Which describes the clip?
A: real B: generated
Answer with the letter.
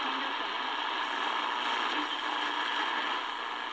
A